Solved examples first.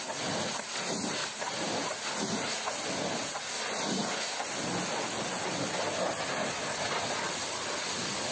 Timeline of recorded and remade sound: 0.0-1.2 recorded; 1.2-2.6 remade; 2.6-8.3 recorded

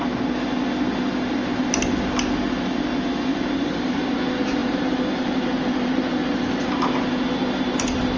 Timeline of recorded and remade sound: 0.0-3.3 recorded; 3.3-4.0 remade; 4.0-4.6 recorded; 4.6-6.1 remade; 6.1-8.2 recorded

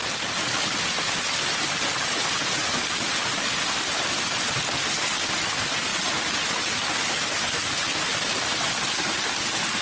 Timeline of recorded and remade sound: 0.0-9.8 recorded

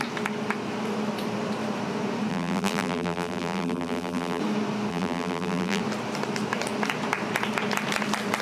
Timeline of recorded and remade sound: 0.0-2.3 recorded; 2.3-4.4 remade; 4.4-4.9 recorded; 4.9-5.8 remade; 5.8-8.4 recorded

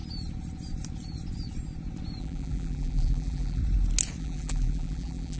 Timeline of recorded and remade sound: 0.0-2.2 recorded; 2.2-3.6 remade; 3.6-4.2 recorded; 4.2-5.4 remade

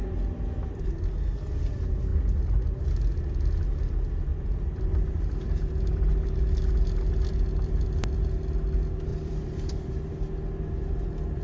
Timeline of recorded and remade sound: 0.0-4.3 recorded; 4.3-6.7 remade; 6.7-9.1 recorded; 9.1-10.1 remade; 10.1-11.4 recorded

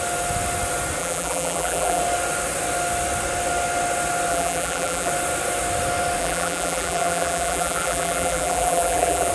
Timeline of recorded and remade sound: 0.0-1.0 recorded; 1.0-2.0 remade; 2.0-4.3 recorded; 4.3-5.1 remade; 5.1-6.2 recorded; 6.2-9.3 remade